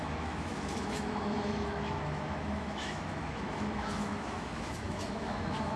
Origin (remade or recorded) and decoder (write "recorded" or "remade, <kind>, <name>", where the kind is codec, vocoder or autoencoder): remade, autoencoder, DAC-VAE